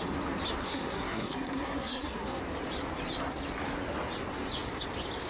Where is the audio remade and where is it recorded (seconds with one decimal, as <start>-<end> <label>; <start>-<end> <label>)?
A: 0.0-0.6 recorded; 0.6-2.4 remade; 2.4-5.3 recorded